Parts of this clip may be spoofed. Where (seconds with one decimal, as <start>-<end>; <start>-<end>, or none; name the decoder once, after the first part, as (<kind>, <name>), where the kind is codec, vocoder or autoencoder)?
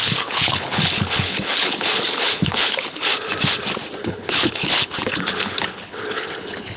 0.0-3.1 (codec, HILCodec); 4.0-6.8